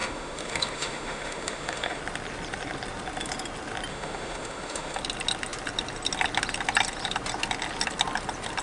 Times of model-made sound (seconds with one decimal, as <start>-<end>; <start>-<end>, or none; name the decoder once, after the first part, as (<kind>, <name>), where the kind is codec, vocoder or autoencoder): 0.0-2.0 (autoencoder, DAC-VAE); 3.9-5.0

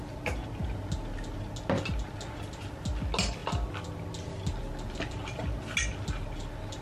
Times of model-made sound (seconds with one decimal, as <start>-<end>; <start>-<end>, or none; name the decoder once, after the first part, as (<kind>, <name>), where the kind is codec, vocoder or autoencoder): none

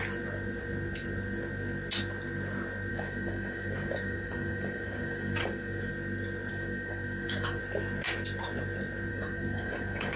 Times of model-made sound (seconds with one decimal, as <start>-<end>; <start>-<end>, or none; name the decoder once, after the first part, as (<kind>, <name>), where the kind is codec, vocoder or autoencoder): 2.9-5.9 (codec, DAC); 6.5-7.6; 9.1-10.2

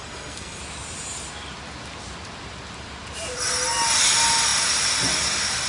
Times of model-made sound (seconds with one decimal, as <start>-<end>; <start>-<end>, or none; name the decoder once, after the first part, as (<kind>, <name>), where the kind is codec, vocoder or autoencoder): 0.0-0.6 (codec, SNAC)

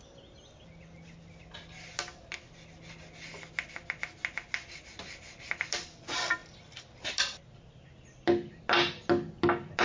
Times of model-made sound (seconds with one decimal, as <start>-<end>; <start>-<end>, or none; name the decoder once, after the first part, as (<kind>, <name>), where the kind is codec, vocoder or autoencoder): none

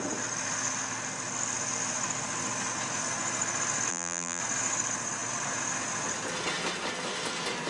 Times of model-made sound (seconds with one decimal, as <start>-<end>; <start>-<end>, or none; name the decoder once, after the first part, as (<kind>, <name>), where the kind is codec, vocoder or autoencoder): 3.9-4.4 (vocoder, BigVGAN v2)